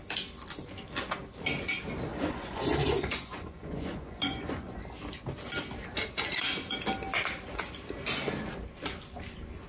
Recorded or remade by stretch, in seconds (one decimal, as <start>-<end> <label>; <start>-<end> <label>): 0.0-2.1 recorded; 2.1-4.8 remade; 4.8-9.7 recorded